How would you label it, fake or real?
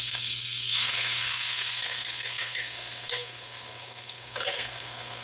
fake